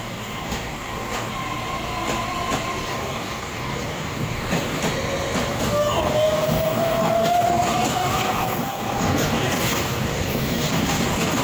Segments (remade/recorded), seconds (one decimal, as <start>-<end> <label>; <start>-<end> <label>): 0.0-1.3 remade; 1.3-2.9 recorded; 2.9-4.8 remade; 4.8-5.5 recorded; 5.5-11.4 remade